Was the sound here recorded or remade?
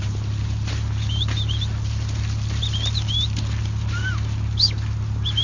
recorded